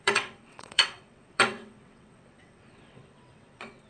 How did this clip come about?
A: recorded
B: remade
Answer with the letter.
B